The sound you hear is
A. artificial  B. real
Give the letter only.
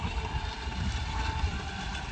B